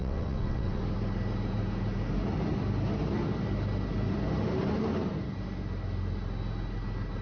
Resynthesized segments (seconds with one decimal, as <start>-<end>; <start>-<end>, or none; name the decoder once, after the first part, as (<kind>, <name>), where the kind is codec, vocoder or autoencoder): 0.0-0.8 (vocoder, WaveNeXt)